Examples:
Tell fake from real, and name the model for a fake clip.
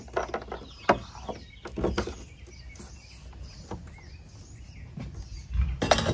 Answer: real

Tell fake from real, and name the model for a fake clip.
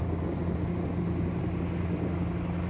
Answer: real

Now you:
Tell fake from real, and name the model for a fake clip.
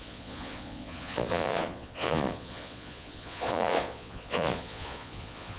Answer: fake, vocoder, Vocos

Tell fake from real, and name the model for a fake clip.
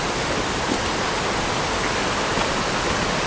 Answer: real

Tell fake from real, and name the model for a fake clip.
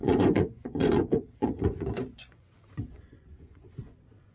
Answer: fake, vocoder, Vocos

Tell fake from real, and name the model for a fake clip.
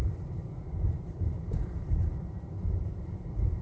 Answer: fake, vocoder, BigVGAN v2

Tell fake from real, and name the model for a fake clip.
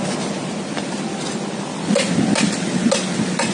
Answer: real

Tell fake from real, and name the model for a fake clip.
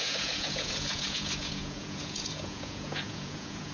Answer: fake, vocoder, Vocos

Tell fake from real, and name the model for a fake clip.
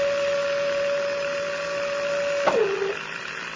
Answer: real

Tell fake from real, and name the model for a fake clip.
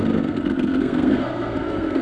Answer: fake, codec, SNAC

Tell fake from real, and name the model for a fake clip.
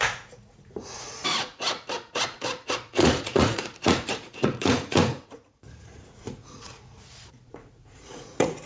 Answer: fake, vocoder, Vocos